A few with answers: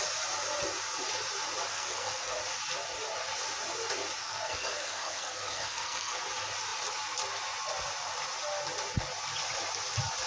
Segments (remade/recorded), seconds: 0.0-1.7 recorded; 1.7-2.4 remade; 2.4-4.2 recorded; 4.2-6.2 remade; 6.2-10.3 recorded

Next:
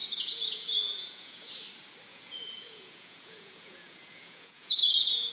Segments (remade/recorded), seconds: 0.0-1.5 remade; 1.5-2.1 recorded; 2.1-5.3 remade

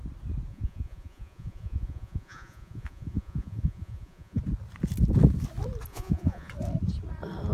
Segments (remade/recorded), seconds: 0.0-0.5 recorded; 0.5-4.4 remade; 4.4-5.9 recorded; 5.9-6.5 remade; 6.5-7.5 recorded

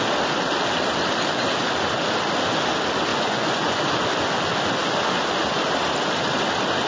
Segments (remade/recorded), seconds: 0.0-3.1 recorded; 3.1-3.8 remade; 3.8-6.9 recorded

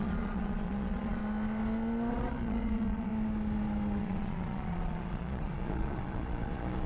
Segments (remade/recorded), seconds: 0.0-1.2 remade; 1.2-2.1 recorded; 2.1-3.1 remade; 3.1-4.0 recorded; 4.0-6.9 remade